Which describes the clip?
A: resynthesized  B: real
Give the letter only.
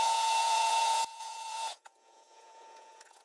A